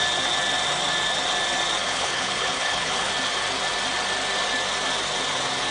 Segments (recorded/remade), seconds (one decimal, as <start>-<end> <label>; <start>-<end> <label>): 0.0-1.8 recorded; 1.8-3.1 remade; 3.1-5.7 recorded